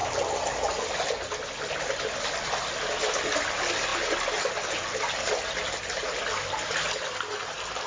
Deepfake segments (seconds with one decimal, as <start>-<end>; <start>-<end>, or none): none